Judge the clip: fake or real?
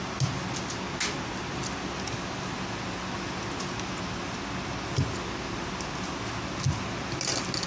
real